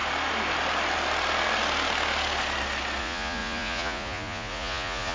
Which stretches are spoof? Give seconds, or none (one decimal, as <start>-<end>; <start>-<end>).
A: 3.0-5.1